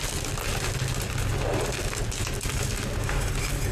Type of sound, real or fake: real